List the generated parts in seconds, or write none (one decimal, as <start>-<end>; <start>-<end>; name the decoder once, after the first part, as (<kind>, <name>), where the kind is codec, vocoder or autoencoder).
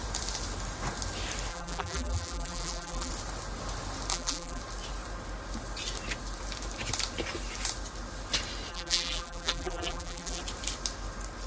1.5-3.1 (vocoder, BigVGAN v2); 4.1-4.6; 8.7-10.4